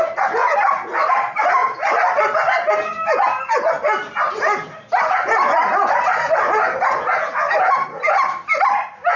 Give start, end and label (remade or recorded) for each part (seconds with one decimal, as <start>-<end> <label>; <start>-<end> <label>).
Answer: 0.0-9.2 recorded